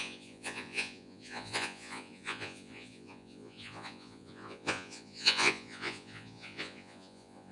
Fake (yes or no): yes